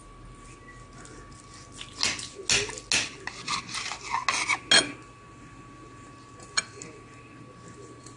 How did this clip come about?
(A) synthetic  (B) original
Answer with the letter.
B